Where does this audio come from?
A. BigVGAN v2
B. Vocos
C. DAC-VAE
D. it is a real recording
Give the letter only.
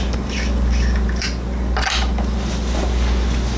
D